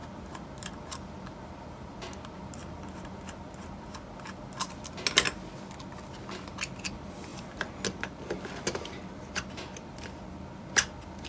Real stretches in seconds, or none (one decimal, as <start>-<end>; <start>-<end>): 0.0-11.3